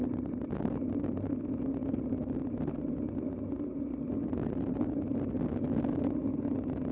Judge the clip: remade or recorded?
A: recorded